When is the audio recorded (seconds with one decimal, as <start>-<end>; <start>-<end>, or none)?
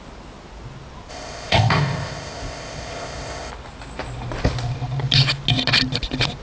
0.0-1.1; 3.5-6.4